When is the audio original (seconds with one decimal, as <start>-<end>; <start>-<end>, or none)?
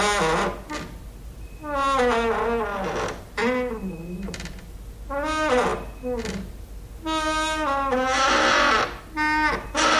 0.0-10.0